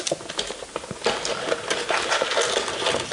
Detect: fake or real real